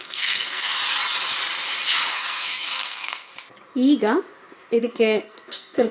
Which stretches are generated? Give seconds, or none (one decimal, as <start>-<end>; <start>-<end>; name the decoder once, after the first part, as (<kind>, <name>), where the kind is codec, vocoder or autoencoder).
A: 0.0-0.7 (codec, SNAC); 2.1-3.3; 4.8-5.9